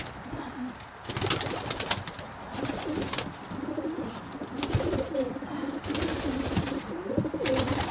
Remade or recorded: recorded